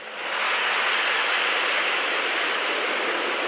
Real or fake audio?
real